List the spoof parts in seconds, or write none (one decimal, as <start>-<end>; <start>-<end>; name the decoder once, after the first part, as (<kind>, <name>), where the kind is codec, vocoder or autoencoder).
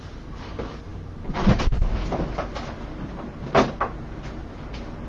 none